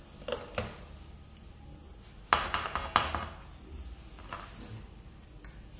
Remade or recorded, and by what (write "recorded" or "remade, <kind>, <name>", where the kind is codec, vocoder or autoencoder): recorded